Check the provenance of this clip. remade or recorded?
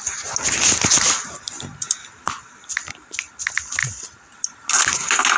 recorded